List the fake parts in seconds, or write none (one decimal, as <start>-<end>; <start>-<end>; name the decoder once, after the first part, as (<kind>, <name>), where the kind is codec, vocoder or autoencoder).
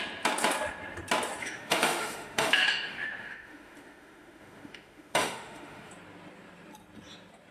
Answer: 1.4-5.9 (autoencoder, DAC-VAE)